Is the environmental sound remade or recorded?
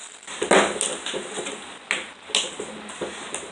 recorded